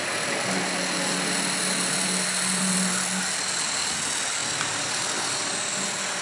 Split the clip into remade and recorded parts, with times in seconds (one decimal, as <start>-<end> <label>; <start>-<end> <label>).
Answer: 0.0-4.4 recorded; 4.4-5.5 remade; 5.5-6.2 recorded